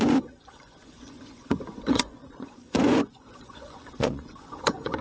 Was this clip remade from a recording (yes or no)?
yes